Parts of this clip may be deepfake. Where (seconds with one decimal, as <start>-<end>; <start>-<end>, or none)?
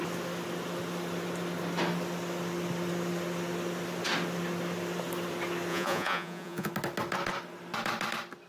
5.7-6.7